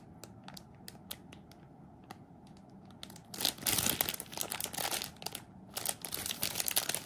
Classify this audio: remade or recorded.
recorded